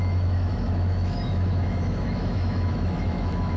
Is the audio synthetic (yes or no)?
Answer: yes